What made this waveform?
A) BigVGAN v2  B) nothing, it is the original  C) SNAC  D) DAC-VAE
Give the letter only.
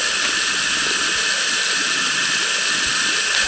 B